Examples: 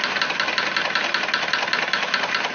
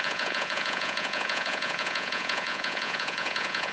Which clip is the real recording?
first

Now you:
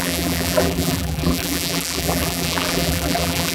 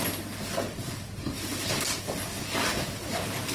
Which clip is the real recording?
second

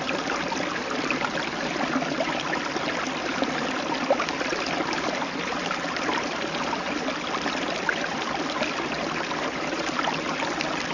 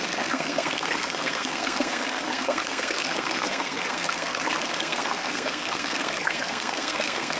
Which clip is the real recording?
first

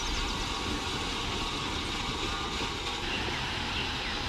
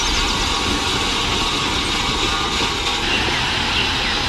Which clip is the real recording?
second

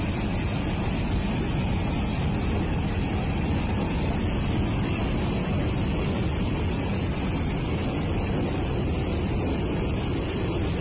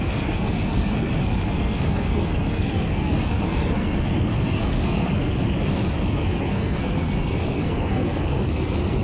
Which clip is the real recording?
first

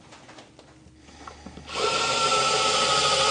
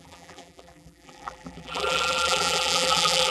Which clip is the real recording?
first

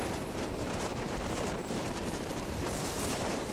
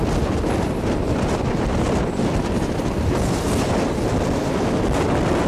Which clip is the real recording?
second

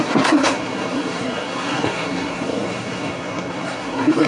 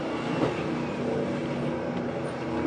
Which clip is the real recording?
second